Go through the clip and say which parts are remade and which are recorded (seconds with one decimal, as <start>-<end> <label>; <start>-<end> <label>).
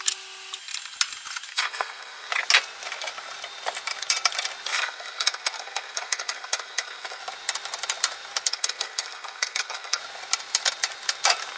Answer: 0.0-1.5 recorded; 1.5-2.3 remade; 2.3-4.7 recorded; 4.7-7.2 remade; 7.2-8.5 recorded; 8.5-10.0 remade; 10.0-11.6 recorded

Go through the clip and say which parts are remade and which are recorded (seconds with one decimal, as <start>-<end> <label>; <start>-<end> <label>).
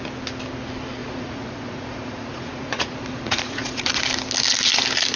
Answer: 0.0-1.0 recorded; 1.0-4.0 remade; 4.0-5.2 recorded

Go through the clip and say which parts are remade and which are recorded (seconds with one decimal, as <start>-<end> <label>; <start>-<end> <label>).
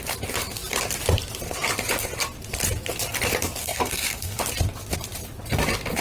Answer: 0.0-3.6 recorded; 3.6-4.4 remade; 4.4-6.0 recorded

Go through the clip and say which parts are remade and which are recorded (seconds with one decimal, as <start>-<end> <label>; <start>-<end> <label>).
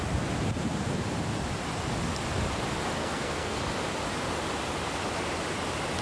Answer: 0.0-3.0 recorded; 3.0-3.6 remade; 3.6-6.0 recorded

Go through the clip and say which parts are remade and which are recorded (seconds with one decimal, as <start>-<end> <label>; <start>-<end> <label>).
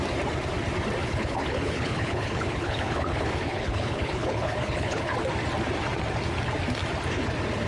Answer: 0.0-1.0 recorded; 1.0-5.1 remade; 5.1-7.7 recorded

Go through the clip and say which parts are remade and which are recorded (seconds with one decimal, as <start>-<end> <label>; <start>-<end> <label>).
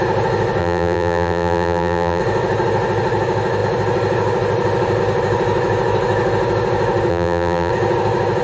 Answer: 0.0-0.6 recorded; 0.6-2.2 remade; 2.2-7.1 recorded; 7.1-7.7 remade; 7.7-8.4 recorded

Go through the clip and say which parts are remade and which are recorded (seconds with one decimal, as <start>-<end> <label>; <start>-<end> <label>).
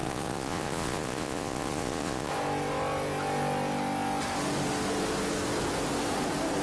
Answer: 0.0-2.3 remade; 2.3-6.6 recorded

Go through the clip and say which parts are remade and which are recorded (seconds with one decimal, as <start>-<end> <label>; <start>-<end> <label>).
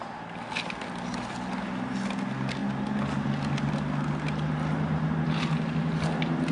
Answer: 0.0-6.5 recorded